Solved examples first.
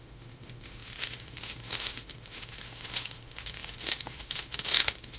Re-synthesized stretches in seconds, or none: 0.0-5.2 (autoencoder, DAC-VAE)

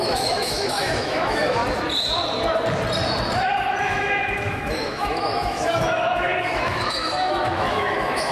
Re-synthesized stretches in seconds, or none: 0.0-1.6 (autoencoder, DAC-VAE); 3.8-8.3

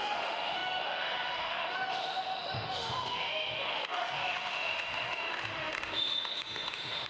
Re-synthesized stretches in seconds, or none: 0.0-7.1 (autoencoder, DAC-VAE)

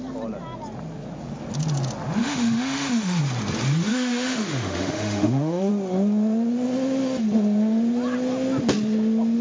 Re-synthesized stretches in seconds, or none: 2.2-3.2 (autoencoder, DAC-VAE); 3.9-5.7

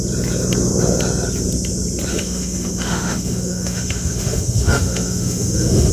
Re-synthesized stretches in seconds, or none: 2.1-5.9 (autoencoder, DAC-VAE)

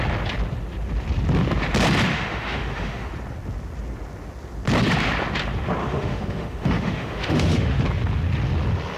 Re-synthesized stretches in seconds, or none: 2.1-3.1 (autoencoder, DAC-VAE); 5.8-7.8

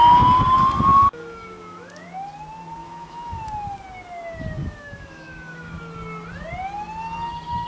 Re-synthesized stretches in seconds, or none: 0.9-2.1 (autoencoder, DAC-VAE); 2.8-3.4; 4.6-5.8